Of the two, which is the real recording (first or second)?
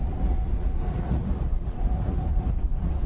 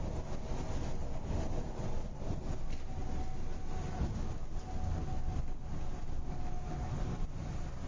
second